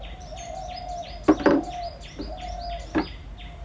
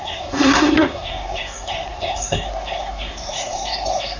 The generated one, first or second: second